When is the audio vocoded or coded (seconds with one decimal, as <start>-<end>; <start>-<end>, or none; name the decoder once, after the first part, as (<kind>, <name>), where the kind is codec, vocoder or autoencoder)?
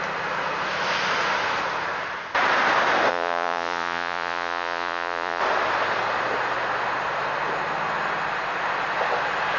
3.1-5.4 (vocoder, Vocos)